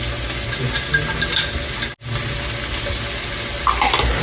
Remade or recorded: recorded